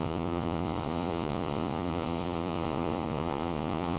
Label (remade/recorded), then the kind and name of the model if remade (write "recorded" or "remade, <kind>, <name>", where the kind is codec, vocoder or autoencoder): remade, vocoder, Vocos